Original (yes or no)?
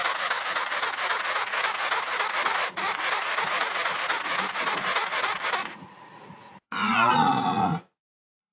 no